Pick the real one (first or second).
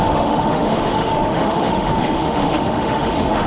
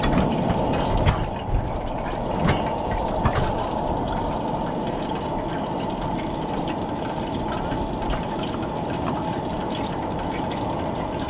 second